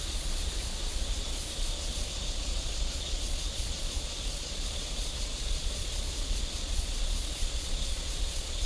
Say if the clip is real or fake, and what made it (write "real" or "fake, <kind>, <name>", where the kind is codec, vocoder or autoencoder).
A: fake, vocoder, Vocos